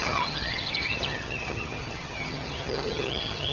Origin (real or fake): fake